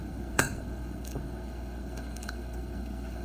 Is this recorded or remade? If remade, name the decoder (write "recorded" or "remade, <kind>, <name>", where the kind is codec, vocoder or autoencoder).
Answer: remade, codec, SNAC